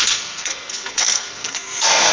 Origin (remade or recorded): remade